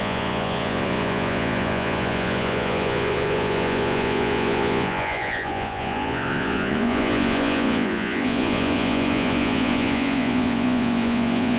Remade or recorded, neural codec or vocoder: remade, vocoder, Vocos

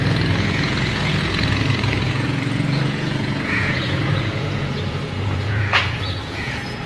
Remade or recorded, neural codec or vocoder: remade, vocoder, Vocos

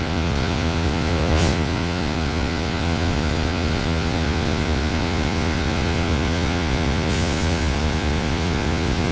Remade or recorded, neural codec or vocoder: remade, vocoder, Vocos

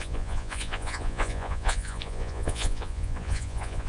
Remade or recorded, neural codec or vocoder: remade, vocoder, Vocos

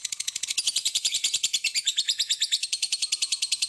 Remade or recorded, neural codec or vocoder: remade, vocoder, Vocos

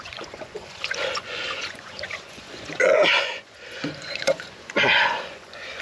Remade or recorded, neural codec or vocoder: remade, vocoder, Vocos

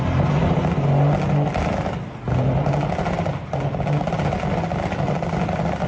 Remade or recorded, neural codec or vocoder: recorded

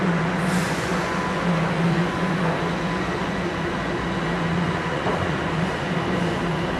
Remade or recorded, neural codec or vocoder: remade, vocoder, Vocos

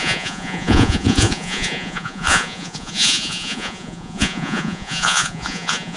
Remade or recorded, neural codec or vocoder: remade, vocoder, Vocos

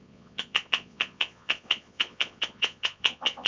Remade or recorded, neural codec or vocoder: remade, vocoder, Vocos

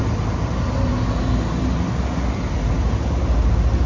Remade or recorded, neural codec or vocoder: recorded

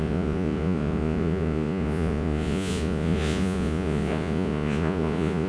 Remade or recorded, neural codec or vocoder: remade, vocoder, Vocos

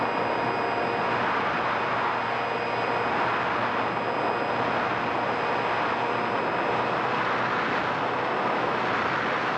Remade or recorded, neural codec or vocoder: recorded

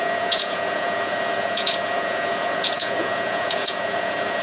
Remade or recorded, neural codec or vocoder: remade, vocoder, Vocos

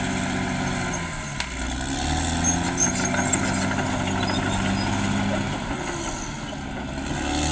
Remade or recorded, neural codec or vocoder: recorded